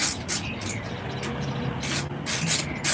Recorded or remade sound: recorded